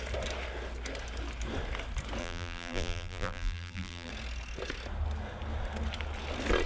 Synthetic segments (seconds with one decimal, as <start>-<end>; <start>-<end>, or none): 2.2-4.1